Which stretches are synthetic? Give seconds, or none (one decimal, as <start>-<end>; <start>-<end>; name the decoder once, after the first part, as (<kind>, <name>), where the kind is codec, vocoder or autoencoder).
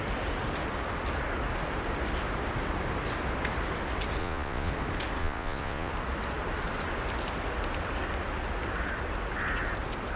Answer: 4.2-4.7 (vocoder, Vocos); 5.2-5.9